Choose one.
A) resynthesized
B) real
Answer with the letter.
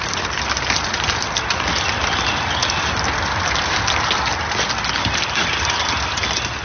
B